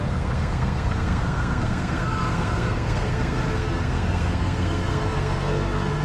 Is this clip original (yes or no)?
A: no